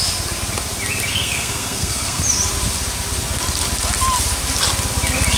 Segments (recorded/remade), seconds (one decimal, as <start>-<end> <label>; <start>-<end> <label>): 0.0-1.1 recorded; 1.1-2.2 remade; 2.2-5.4 recorded